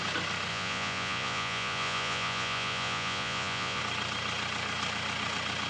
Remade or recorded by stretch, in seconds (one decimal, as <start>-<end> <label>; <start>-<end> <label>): 0.0-0.5 recorded; 0.5-3.8 remade; 3.8-5.7 recorded